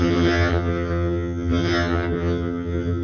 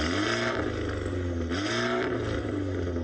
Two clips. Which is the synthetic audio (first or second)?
first